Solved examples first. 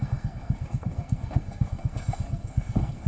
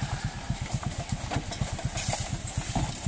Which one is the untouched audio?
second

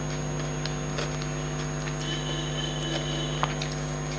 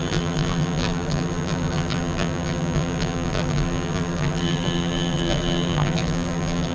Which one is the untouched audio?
first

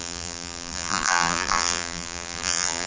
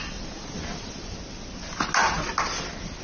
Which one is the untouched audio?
second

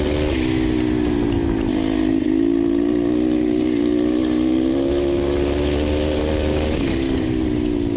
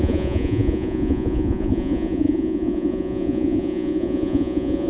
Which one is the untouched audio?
first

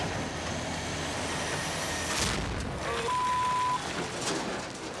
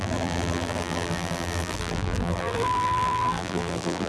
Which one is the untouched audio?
first